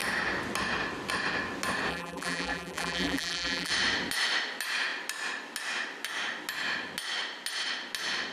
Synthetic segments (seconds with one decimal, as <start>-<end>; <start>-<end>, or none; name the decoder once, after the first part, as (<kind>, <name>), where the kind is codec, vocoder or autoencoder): 1.9-3.7 (vocoder, BigVGAN v2)